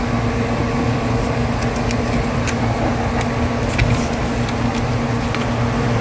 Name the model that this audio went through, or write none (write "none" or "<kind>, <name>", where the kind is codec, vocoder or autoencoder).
none